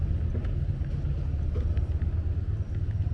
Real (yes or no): yes